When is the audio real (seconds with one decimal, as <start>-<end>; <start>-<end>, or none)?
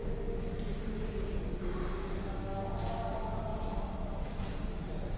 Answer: 0.0-5.2